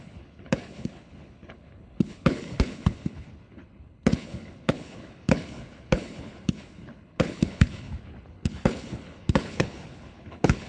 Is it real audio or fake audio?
fake